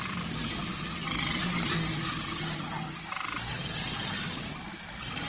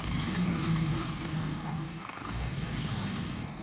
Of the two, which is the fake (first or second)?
second